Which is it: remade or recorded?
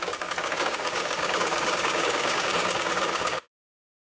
remade